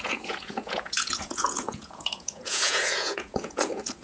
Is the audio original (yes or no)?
no